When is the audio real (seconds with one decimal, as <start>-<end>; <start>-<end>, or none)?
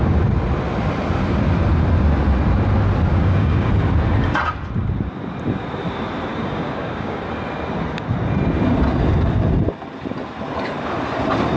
0.0-3.1; 3.7-6.3; 7.2-11.6